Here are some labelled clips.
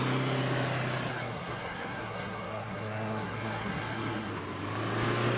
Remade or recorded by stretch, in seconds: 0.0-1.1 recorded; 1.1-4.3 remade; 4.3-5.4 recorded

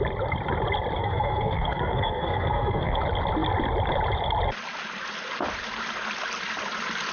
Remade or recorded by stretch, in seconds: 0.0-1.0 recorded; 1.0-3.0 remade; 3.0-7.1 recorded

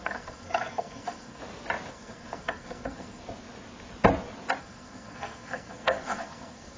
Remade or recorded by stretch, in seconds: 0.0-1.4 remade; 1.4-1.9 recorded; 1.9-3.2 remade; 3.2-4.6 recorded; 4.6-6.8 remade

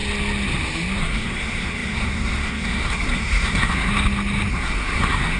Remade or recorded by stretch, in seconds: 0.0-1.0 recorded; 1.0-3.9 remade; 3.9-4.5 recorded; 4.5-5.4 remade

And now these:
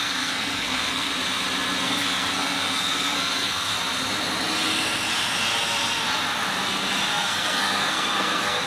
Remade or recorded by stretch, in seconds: 0.0-1.1 remade; 1.1-1.8 recorded; 1.8-3.7 remade; 3.7-7.1 recorded; 7.1-8.7 remade

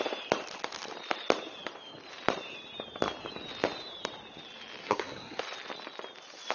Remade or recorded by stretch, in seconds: 0.0-4.8 recorded; 4.8-5.4 remade; 5.4-6.5 recorded

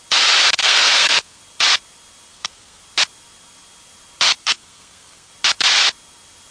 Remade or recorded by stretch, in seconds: 0.0-0.6 recorded; 0.6-1.4 remade; 1.4-2.3 recorded; 2.3-2.8 remade; 2.8-4.4 recorded; 4.4-5.3 remade; 5.3-6.5 recorded

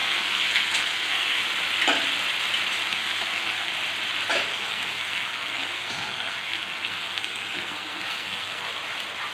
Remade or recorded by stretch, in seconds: 0.0-1.4 remade; 1.4-2.9 recorded; 2.9-3.7 remade; 3.7-4.5 recorded; 4.5-8.7 remade; 8.7-9.3 recorded